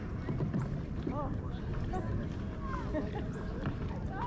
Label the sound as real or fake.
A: fake